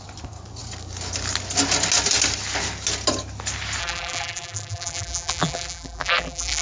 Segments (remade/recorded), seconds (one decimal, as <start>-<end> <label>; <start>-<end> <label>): 0.0-3.8 recorded; 3.8-6.6 remade